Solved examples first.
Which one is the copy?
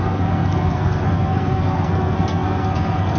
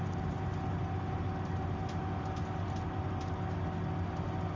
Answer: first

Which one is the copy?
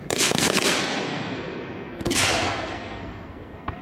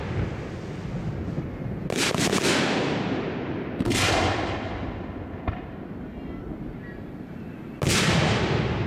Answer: first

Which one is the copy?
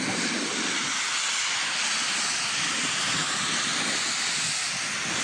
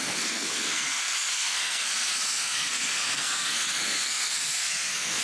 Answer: second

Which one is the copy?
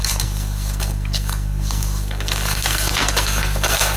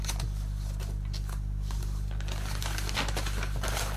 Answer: first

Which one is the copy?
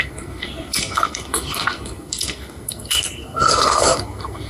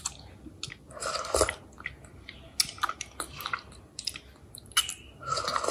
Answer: first